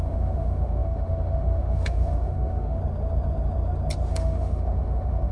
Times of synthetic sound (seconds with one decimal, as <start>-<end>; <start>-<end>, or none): 0.0-2.8; 4.1-5.3